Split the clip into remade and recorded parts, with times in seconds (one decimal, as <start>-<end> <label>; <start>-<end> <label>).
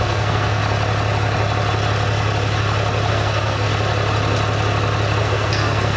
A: 0.0-0.6 remade; 0.6-3.1 recorded; 3.1-3.7 remade; 3.7-5.2 recorded; 5.2-6.0 remade